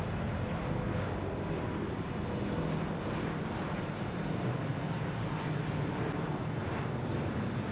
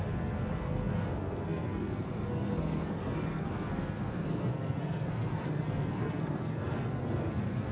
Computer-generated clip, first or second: second